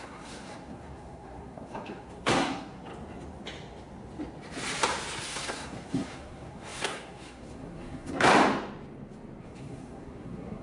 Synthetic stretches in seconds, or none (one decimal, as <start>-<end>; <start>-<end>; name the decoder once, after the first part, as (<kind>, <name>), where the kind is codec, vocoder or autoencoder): 0.0-2.9 (codec, SNAC); 5.2-8.3; 9.4-10.6